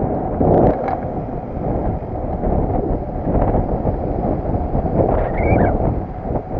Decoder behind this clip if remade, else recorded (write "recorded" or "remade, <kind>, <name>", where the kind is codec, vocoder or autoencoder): recorded